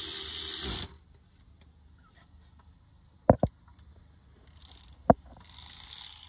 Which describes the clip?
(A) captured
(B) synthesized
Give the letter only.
A